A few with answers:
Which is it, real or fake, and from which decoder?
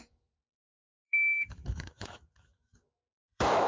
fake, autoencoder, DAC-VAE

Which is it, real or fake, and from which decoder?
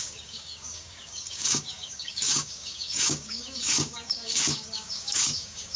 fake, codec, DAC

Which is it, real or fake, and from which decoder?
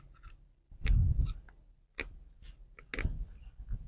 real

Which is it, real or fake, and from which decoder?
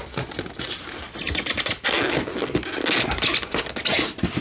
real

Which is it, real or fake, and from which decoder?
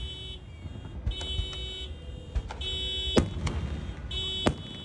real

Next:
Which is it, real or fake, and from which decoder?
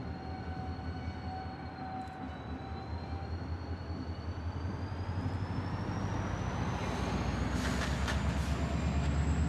real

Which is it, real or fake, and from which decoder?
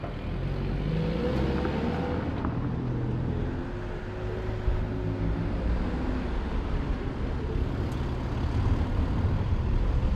real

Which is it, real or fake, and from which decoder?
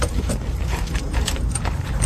fake, vocoder, BigVGAN v2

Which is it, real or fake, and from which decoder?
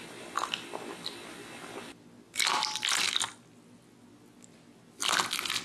real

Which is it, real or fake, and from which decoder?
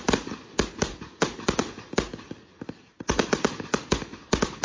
real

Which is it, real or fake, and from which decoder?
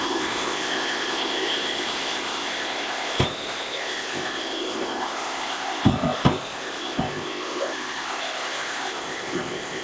fake, codec, ZipCodec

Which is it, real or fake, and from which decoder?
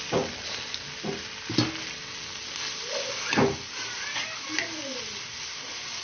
real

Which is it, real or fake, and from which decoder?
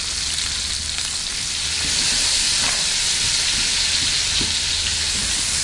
real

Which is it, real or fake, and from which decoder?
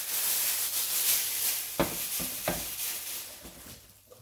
real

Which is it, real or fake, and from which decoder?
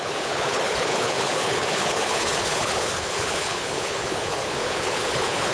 fake, codec, HILCodec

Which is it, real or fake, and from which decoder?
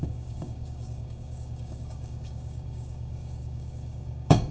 fake, codec, DAC